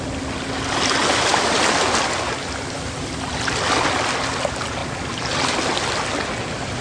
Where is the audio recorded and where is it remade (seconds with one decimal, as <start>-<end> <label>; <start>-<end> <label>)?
0.0-1.3 recorded; 1.3-2.5 remade; 2.5-6.8 recorded